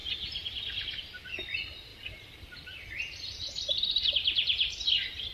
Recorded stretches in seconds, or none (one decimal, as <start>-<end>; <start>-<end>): 1.2-1.9; 4.1-5.3